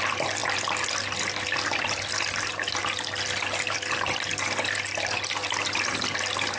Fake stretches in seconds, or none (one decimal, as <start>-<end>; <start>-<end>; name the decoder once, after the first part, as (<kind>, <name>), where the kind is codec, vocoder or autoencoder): none